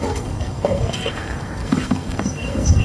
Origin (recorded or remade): remade